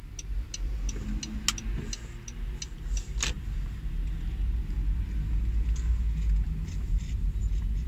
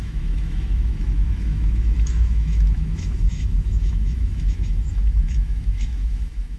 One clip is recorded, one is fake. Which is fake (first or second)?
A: second